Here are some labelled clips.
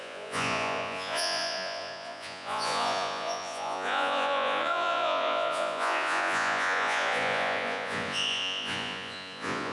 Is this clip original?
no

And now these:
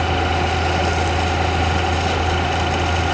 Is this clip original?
yes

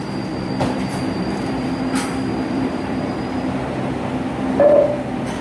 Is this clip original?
no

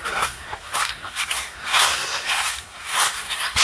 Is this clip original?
no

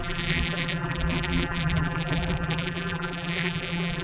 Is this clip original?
no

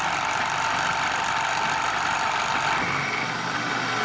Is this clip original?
yes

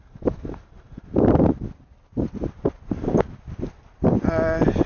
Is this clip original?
yes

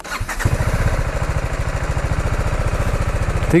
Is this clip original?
yes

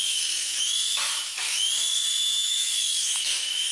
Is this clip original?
no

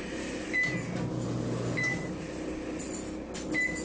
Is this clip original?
yes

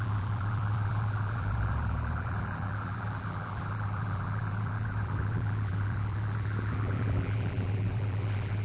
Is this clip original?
no